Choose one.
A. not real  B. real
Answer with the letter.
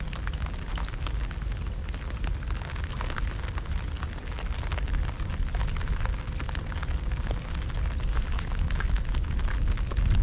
B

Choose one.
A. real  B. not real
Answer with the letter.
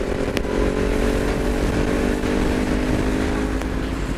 A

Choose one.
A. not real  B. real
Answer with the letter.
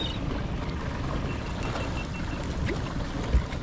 B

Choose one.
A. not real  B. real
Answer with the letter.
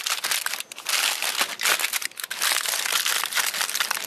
B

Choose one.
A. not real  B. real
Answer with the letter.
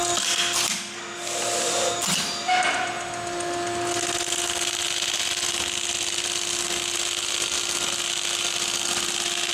B